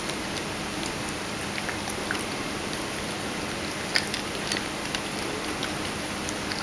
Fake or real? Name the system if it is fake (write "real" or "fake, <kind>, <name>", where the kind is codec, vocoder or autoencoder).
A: real